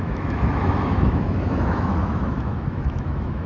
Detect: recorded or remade remade